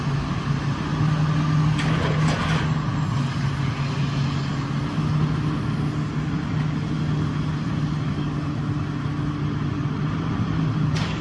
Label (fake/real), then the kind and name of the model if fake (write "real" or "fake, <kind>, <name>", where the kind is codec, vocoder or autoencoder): real